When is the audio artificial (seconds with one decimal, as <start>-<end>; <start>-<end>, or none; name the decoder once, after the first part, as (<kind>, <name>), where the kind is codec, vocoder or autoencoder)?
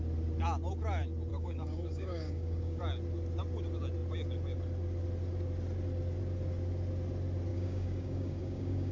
1.3-2.8 (codec, DAC); 7.5-8.9